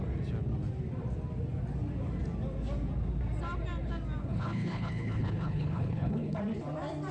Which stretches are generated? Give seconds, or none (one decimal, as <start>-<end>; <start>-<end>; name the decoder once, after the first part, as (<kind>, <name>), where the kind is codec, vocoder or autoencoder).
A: 4.2-6.4 (codec, HILCodec)